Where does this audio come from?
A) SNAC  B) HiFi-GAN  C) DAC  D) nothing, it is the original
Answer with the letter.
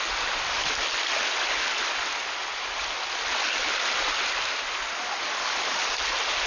D